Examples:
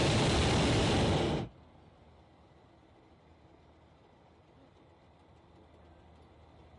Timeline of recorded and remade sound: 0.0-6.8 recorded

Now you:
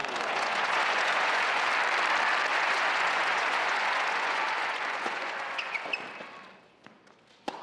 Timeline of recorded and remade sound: 0.0-1.7 remade; 1.7-2.5 recorded; 2.5-5.9 remade; 5.9-7.6 recorded

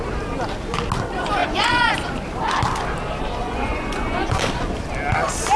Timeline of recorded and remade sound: 0.0-1.4 recorded; 1.4-1.9 remade; 1.9-3.4 recorded; 3.4-4.4 remade; 4.4-5.6 recorded

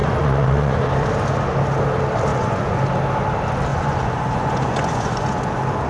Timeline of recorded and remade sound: 0.0-0.9 remade; 0.9-2.3 recorded; 2.3-2.8 remade; 2.8-3.7 recorded; 3.7-5.5 remade; 5.5-5.9 recorded

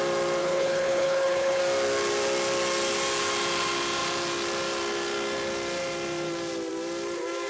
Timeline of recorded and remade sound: 0.0-0.4 recorded; 0.4-1.6 remade; 1.6-7.5 recorded